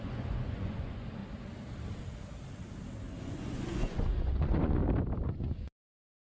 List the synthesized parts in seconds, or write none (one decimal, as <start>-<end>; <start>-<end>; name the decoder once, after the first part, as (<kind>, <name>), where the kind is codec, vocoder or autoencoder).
0.0-1.2 (vocoder, Vocos); 3.2-4.8; 5.4-6.4